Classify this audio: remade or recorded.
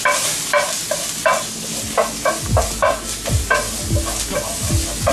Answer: recorded